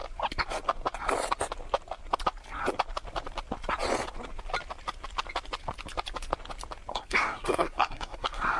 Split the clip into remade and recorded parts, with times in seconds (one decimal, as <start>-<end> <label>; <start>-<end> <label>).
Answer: 0.0-6.9 recorded; 6.9-8.6 remade